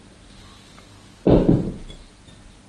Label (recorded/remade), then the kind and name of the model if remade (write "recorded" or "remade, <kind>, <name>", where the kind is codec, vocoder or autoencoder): recorded